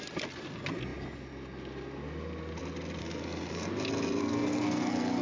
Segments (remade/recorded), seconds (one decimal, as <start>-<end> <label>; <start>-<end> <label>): 0.0-3.0 recorded; 3.0-3.7 remade; 3.7-4.2 recorded; 4.2-5.2 remade